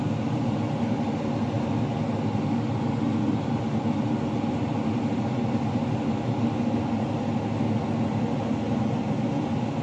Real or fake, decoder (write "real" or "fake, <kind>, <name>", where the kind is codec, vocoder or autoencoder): real